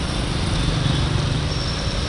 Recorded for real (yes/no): yes